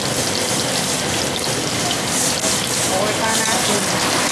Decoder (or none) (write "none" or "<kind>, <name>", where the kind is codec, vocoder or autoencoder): none